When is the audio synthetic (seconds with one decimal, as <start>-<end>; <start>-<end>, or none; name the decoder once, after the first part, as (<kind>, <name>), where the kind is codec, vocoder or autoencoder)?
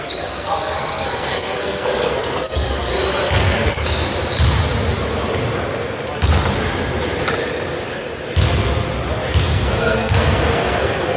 0.0-2.9 (codec, SNAC); 3.4-4.1; 9.4-11.2